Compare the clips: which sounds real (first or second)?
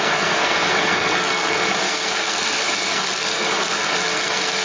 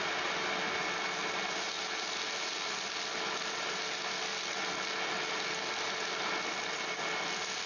second